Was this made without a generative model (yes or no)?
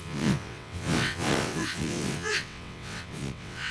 no